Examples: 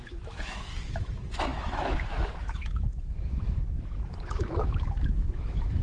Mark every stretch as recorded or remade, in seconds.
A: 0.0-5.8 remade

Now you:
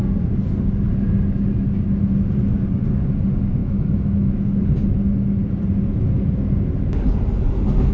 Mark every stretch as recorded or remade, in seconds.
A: 0.0-3.6 recorded; 3.6-4.3 remade; 4.3-7.9 recorded

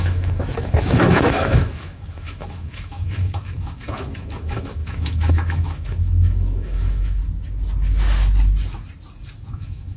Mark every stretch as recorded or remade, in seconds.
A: 0.0-7.2 remade; 7.2-9.5 recorded; 9.5-10.0 remade

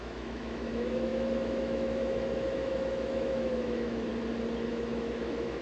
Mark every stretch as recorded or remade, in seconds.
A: 0.0-4.1 remade; 4.1-4.7 recorded; 4.7-5.6 remade

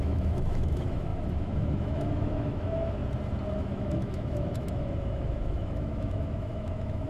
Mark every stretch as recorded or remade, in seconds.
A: 0.0-3.0 remade; 3.0-3.6 recorded; 3.6-7.1 remade

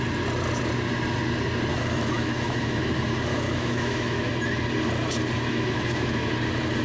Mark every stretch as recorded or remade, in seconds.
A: 0.0-1.7 recorded; 1.7-2.9 remade; 2.9-3.3 recorded; 3.3-4.3 remade; 4.3-5.5 recorded; 5.5-6.3 remade; 6.3-6.8 recorded

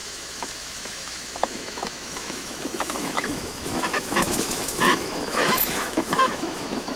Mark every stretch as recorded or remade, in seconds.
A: 0.0-7.0 remade